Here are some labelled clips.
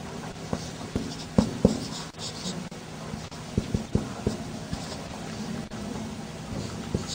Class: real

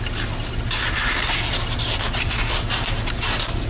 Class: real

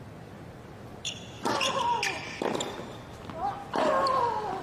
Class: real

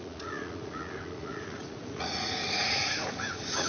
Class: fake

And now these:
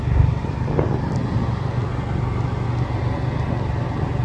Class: real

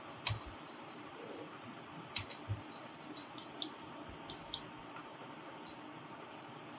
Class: real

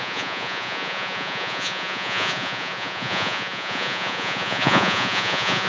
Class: fake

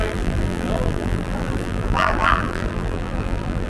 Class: fake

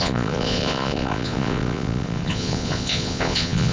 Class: fake